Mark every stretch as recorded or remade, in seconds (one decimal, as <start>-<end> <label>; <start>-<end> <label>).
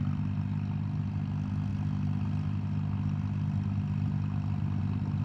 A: 0.0-5.2 recorded